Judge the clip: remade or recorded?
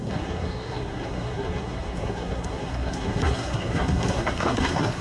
remade